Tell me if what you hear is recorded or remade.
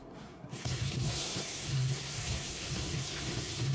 remade